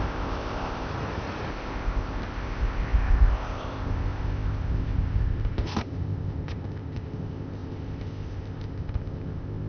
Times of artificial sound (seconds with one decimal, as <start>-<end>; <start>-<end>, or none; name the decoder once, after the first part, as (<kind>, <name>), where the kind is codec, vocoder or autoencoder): 0.0-0.9 (codec, ZipCodec); 1.5-9.7